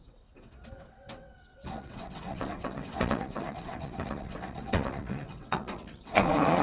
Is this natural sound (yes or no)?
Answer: no